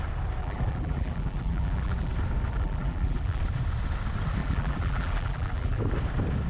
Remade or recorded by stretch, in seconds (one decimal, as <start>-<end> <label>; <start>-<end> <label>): 0.0-0.4 recorded; 0.4-2.1 remade; 2.1-2.5 recorded; 2.5-3.4 remade; 3.4-4.4 recorded; 4.4-5.8 remade; 5.8-6.5 recorded